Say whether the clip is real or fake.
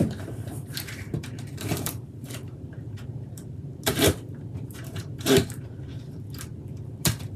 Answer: fake